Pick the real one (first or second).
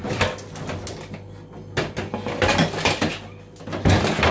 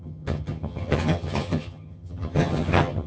first